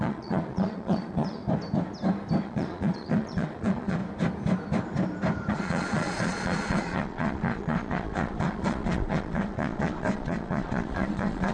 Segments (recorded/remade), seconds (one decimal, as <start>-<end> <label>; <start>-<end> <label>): 0.0-1.4 remade; 1.4-2.4 recorded; 2.4-4.0 remade; 4.0-5.5 recorded; 5.5-11.5 remade